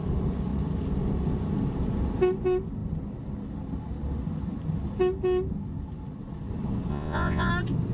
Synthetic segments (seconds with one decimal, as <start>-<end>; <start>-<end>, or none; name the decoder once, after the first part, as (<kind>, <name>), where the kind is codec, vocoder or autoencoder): 6.9-7.5 (vocoder, Vocos)